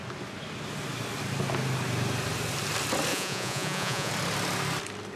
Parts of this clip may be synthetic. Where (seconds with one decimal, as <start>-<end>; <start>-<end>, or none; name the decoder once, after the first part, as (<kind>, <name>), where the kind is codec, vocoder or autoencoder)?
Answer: 3.1-4.1 (vocoder, Vocos)